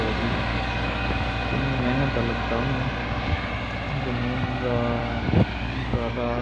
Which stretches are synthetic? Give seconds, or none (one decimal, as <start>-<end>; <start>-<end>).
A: 0.5-1.4; 3.0-3.5; 5.0-6.4